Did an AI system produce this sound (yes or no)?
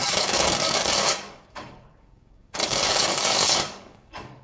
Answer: yes